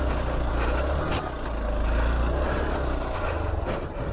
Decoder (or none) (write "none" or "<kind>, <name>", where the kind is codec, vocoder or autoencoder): none